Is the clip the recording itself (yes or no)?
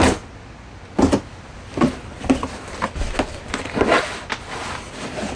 yes